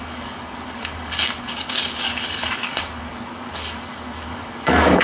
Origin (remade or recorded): remade